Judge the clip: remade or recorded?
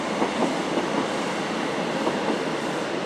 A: recorded